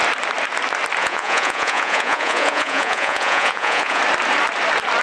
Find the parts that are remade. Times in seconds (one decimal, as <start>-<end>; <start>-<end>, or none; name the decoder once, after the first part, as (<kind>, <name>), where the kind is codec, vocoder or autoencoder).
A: 1.0-4.0 (vocoder, Vocos)

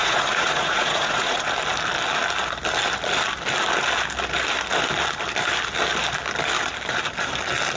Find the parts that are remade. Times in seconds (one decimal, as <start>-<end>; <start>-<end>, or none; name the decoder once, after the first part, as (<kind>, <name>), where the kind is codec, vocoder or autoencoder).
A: 0.0-1.4 (vocoder, Vocos)

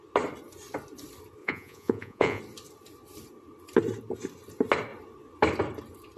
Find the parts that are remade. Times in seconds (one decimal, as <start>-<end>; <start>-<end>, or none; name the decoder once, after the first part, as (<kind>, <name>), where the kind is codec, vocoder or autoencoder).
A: 1.4-2.4 (vocoder, Vocos)

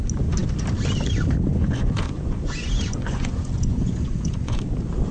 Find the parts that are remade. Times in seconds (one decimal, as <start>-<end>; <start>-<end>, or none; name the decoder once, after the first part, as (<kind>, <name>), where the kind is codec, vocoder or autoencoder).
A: 1.5-4.6 (vocoder, Vocos)

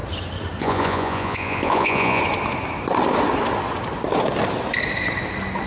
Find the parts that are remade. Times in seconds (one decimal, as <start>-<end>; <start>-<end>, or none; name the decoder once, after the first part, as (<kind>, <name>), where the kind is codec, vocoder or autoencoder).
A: 0.6-2.2 (vocoder, Vocos)

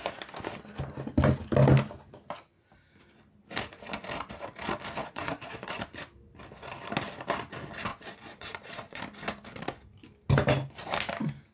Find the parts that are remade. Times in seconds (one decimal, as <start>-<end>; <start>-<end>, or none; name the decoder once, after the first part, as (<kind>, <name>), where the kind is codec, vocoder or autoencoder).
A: 5.0-5.8 (vocoder, Vocos); 7.9-9.0

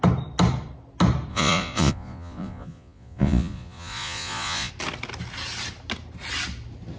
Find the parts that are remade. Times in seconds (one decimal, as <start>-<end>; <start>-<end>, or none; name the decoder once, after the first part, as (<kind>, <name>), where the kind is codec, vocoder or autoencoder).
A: 1.3-4.7 (vocoder, Vocos)

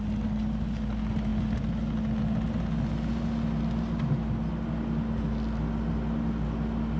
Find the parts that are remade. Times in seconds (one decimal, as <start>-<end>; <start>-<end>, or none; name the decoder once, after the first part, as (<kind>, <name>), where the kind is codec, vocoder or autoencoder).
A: none